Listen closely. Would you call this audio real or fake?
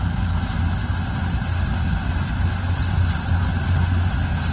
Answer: real